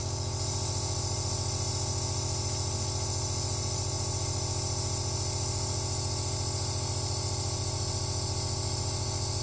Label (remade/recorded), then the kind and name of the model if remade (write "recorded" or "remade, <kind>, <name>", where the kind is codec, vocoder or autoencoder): recorded